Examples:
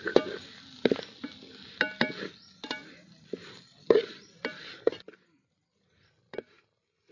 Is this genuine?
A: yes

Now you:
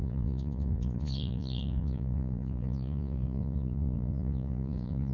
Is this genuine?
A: no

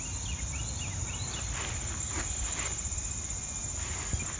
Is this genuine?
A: yes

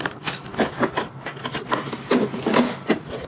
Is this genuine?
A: yes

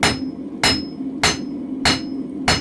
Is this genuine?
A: yes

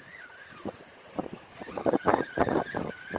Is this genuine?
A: no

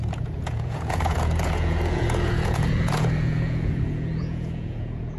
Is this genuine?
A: no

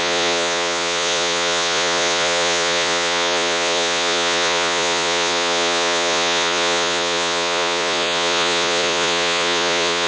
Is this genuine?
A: no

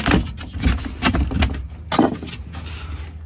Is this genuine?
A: yes